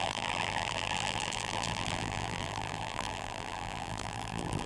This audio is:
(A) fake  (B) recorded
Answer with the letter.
A